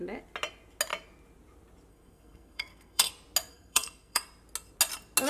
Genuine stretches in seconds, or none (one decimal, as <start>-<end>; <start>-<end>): 0.0-1.9; 3.1-3.5; 4.2-5.3